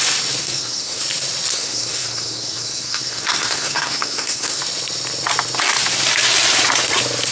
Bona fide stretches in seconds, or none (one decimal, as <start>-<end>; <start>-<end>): 0.0-0.4; 1.0-1.5; 4.6-7.3